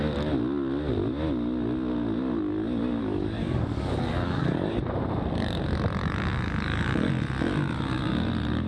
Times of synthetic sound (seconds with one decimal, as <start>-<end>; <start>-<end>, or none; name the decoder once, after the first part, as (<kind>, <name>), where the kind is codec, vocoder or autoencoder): 3.0-4.8 (codec, DAC); 6.0-7.1

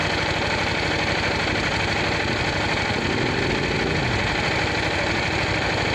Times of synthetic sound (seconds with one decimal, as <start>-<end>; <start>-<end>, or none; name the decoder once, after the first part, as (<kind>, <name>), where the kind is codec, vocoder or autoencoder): none